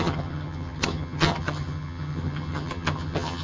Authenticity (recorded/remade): remade